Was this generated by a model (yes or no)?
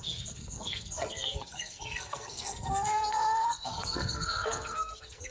yes